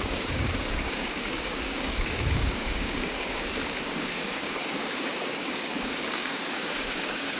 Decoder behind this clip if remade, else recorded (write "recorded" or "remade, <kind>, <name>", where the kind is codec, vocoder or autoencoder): remade, codec, DAC